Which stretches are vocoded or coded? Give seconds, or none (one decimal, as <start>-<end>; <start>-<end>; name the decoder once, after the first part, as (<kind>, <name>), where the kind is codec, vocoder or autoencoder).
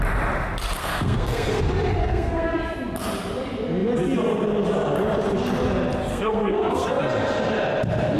0.8-1.6 (codec, SNAC); 2.0-2.6; 6.1-7.0